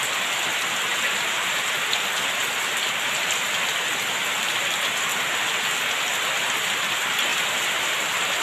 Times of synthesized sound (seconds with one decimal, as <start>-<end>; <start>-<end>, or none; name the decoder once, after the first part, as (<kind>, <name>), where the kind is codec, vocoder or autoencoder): 0.9-1.5 (vocoder, BigVGAN v2); 7.3-7.9